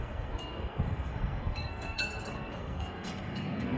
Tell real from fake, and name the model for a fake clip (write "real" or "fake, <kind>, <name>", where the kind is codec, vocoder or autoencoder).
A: fake, codec, SNAC